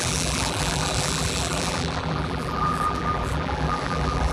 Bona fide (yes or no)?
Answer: no